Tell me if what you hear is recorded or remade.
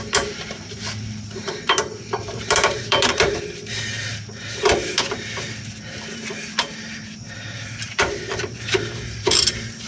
remade